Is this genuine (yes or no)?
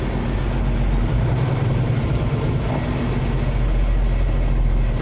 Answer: yes